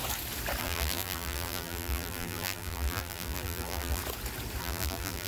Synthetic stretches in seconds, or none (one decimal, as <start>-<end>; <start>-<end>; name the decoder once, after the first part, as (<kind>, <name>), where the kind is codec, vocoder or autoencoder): 0.6-4.0 (vocoder, BigVGAN v2); 4.6-5.3